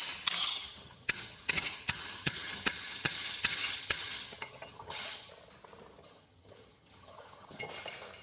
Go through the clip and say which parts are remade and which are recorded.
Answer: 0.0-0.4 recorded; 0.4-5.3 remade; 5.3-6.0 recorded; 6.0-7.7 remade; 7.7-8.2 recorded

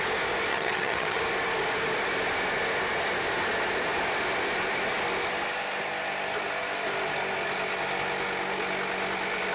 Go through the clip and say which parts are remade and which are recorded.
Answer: 0.0-0.5 recorded; 0.5-1.2 remade; 1.2-9.5 recorded

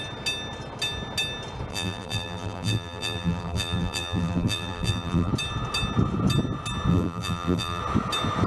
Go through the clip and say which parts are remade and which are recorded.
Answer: 0.0-1.7 recorded; 1.7-5.3 remade; 5.3-6.9 recorded; 6.9-7.8 remade; 7.8-8.5 recorded

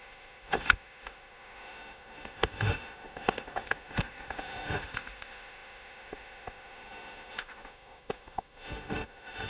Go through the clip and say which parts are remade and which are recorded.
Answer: 0.0-9.5 remade